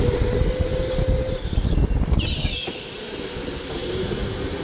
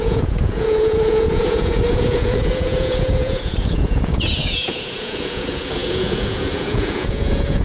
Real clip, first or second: first